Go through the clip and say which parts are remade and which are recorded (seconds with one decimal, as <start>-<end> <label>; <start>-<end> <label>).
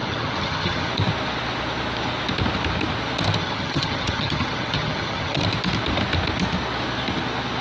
0.0-0.9 remade; 0.9-3.4 recorded; 3.4-5.4 remade; 5.4-7.6 recorded